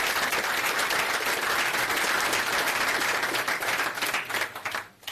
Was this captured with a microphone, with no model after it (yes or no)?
yes